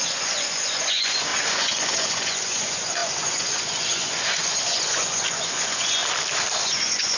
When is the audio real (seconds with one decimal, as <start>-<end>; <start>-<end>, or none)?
6.0-6.6